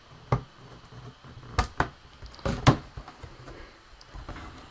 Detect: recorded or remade recorded